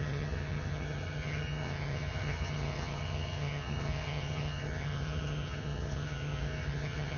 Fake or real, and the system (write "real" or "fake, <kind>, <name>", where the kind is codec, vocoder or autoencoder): fake, vocoder, HiFi-GAN